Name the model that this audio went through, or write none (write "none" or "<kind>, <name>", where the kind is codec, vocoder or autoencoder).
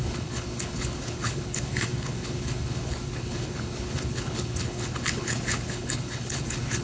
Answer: codec, HILCodec